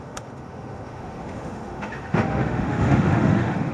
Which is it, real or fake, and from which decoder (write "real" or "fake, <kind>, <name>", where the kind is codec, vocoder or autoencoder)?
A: fake, autoencoder, DAC-VAE